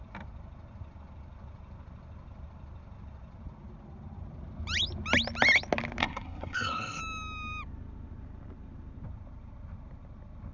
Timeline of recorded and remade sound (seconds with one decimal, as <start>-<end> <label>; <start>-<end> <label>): 0.0-6.0 recorded; 6.0-7.0 remade; 7.0-10.5 recorded

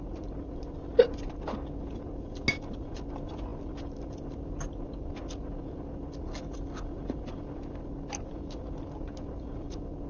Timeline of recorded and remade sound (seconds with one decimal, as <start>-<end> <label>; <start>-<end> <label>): 0.0-10.1 recorded